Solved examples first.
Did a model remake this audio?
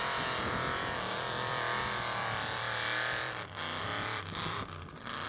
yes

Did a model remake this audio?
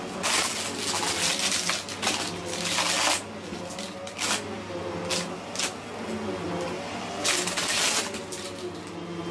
no